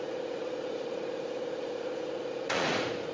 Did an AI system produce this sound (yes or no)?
yes